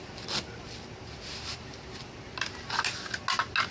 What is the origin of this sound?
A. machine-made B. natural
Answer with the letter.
B